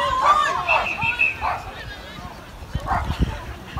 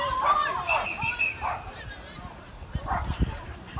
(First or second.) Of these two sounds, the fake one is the second